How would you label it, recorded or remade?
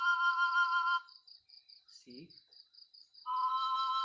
remade